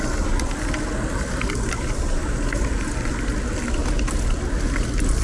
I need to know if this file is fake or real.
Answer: real